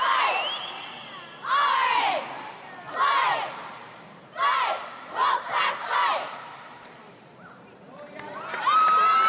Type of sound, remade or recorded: remade